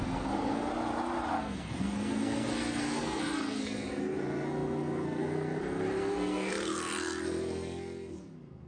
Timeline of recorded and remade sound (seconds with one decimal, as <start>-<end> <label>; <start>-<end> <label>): 0.0-0.7 remade; 0.7-1.3 recorded; 1.3-8.7 remade